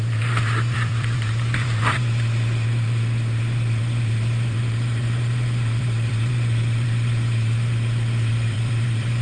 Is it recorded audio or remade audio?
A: remade